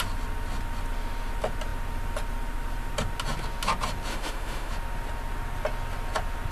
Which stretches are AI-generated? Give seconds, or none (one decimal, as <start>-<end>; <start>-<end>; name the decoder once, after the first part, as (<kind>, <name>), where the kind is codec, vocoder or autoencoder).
4.1-4.7 (autoencoder, DAC-VAE)